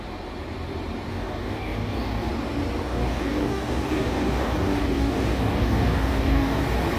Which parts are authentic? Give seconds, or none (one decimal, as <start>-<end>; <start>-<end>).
0.0-1.1; 2.3-2.8; 6.6-7.0